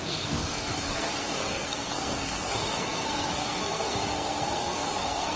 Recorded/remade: remade